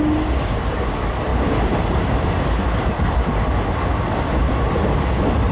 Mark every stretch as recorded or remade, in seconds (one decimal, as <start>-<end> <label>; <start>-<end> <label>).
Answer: 0.0-5.5 recorded